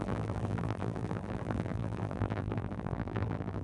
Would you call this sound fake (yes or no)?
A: yes